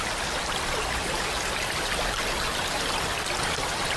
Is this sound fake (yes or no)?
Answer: no